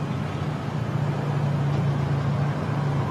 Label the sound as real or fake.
real